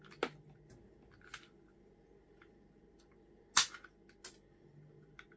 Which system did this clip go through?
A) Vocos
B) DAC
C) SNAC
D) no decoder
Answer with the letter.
D